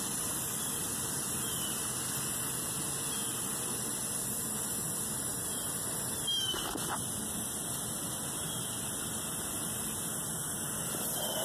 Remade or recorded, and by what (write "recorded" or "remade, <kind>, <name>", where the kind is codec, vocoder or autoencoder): recorded